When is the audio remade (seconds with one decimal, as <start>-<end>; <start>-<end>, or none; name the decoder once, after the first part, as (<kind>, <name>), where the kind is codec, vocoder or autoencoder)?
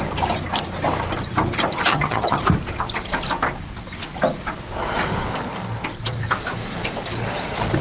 1.9-2.4 (vocoder, HiFi-GAN)